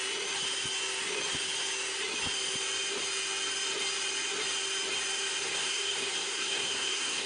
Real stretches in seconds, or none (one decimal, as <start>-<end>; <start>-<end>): 0.0-5.4